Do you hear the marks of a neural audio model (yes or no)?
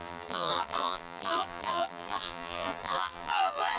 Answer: yes